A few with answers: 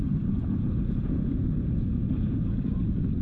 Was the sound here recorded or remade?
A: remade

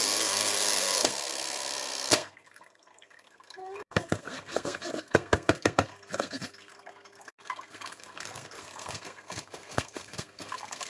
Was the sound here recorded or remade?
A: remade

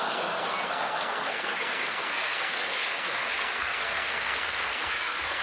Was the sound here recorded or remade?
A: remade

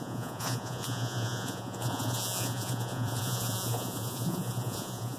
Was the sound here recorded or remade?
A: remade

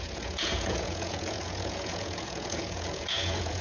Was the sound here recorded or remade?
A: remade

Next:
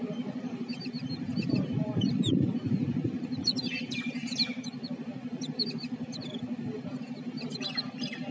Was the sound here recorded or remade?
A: remade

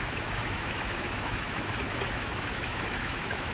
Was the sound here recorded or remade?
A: remade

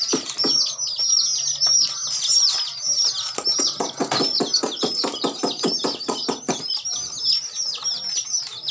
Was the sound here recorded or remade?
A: recorded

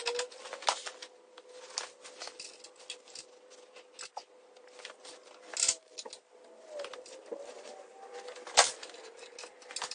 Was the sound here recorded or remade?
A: recorded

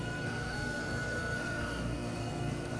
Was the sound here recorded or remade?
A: remade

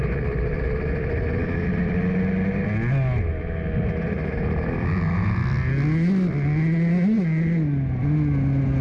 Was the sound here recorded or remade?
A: recorded